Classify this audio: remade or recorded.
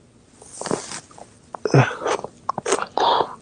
recorded